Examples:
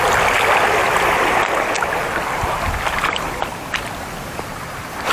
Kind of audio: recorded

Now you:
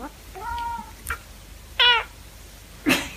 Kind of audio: recorded